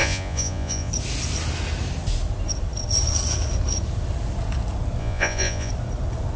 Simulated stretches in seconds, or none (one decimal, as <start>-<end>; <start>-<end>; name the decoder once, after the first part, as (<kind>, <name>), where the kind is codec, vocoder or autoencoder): 0.0-0.9 (vocoder, Vocos); 5.0-5.7